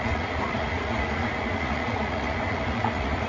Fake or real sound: fake